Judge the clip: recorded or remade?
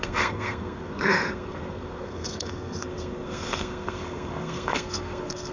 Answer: remade